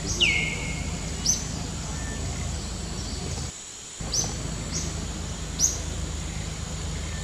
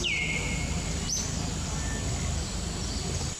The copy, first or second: second